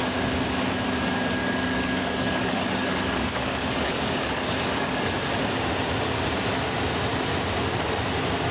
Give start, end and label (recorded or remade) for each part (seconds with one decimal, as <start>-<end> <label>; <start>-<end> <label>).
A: 0.0-1.4 recorded; 1.4-5.2 remade; 5.2-8.5 recorded